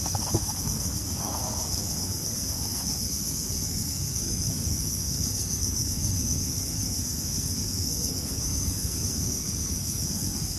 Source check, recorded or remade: remade